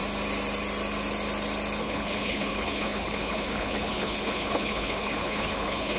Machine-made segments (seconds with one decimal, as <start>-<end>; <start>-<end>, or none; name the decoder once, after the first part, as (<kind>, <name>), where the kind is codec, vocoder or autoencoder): 1.8-6.0 (codec, HILCodec)

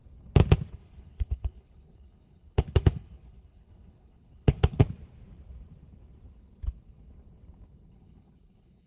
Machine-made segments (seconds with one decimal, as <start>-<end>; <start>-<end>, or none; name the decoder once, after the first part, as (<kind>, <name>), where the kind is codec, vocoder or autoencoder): 0.7-4.8 (codec, HILCodec); 7.9-8.9

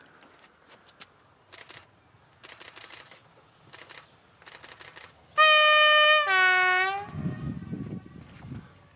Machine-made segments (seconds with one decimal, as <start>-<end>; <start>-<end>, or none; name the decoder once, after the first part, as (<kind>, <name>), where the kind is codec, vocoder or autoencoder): none

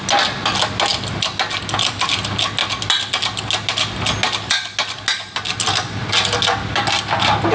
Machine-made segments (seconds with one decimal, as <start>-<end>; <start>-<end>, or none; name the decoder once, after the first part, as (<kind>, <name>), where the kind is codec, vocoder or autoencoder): none